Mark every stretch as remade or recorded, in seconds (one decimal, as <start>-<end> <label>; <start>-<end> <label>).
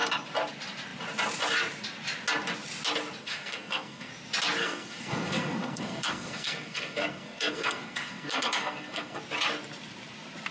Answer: 0.0-3.2 recorded; 3.2-4.1 remade; 4.1-4.6 recorded; 4.6-9.2 remade; 9.2-10.5 recorded